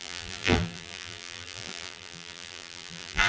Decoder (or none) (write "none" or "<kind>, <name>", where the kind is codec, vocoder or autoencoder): vocoder, BigVGAN v2